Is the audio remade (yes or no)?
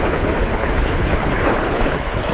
yes